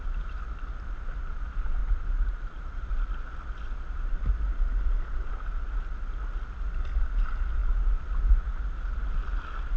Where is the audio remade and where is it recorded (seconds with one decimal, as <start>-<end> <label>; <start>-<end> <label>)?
0.0-1.8 recorded; 1.8-2.9 remade; 2.9-9.8 recorded